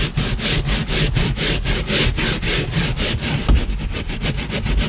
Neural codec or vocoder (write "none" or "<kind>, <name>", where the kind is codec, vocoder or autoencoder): none